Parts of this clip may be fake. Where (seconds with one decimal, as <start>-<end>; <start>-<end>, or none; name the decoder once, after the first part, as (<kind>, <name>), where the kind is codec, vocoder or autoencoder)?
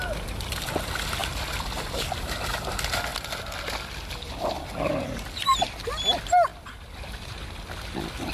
none